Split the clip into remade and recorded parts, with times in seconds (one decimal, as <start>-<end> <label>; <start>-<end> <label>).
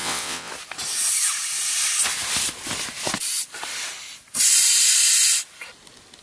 0.0-0.5 remade; 0.5-6.2 recorded